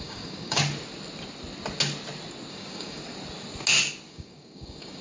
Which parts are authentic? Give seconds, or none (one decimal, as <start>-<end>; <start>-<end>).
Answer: 0.6-2.5; 3.0-4.1